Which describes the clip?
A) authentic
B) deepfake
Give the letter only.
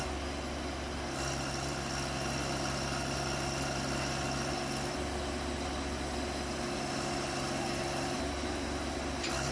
A